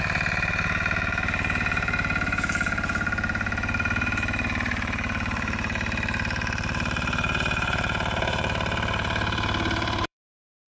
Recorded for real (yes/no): no